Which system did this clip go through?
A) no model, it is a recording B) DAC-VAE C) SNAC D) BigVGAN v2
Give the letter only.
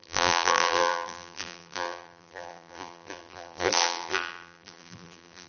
D